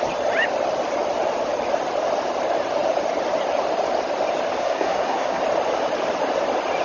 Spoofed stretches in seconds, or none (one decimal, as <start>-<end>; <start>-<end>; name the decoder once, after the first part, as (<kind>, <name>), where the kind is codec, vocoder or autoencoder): 4.6-5.4 (codec, SNAC)